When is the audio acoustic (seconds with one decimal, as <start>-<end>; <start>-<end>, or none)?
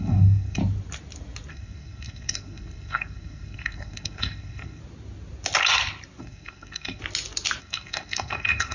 0.6-1.5; 4.8-6.2; 7.0-7.6